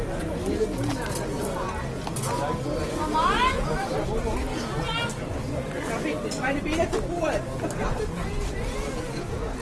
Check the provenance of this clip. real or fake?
real